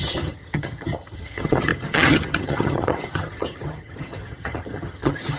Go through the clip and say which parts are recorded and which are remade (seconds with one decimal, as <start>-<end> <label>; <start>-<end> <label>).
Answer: 0.0-5.4 remade